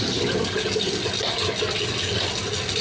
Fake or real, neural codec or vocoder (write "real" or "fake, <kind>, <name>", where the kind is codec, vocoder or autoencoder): real